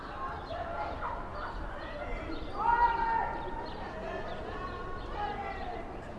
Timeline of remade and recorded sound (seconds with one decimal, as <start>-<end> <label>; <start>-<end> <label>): 0.0-6.2 recorded